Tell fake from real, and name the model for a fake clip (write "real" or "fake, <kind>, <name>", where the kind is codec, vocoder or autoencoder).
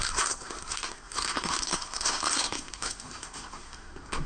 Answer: fake, codec, SNAC